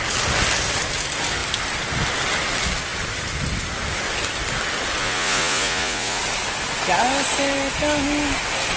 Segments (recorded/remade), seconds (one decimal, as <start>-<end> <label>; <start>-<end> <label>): 0.0-5.0 recorded; 5.0-6.2 remade; 6.2-8.8 recorded